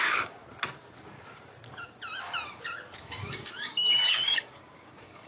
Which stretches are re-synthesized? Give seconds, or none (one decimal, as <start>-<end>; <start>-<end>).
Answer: 0.0-0.4; 3.0-5.3

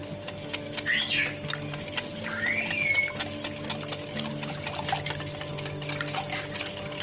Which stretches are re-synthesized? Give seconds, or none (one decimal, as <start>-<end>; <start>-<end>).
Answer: none